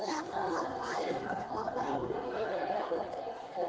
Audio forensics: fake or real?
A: fake